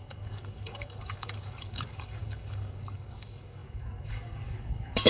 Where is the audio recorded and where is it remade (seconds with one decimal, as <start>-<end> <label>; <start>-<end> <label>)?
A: 0.0-5.1 remade